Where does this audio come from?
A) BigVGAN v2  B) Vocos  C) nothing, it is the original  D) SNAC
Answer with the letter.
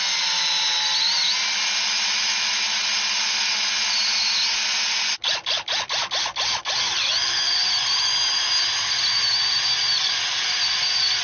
C